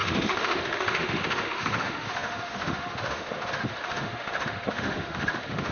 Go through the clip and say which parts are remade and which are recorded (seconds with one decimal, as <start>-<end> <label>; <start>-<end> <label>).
0.0-5.7 remade